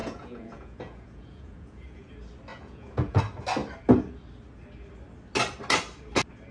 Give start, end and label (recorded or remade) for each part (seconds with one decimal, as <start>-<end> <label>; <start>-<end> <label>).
0.0-2.1 remade; 2.1-2.5 recorded; 2.5-3.2 remade; 3.2-6.5 recorded